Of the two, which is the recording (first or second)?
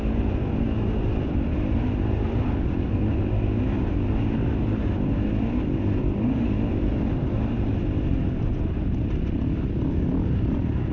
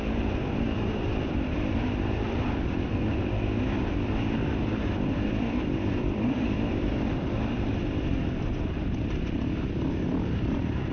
first